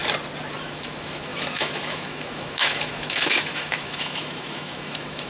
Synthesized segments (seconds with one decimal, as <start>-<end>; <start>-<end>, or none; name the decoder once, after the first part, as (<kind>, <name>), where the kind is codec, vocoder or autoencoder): 0.6-5.3 (autoencoder, DAC-VAE)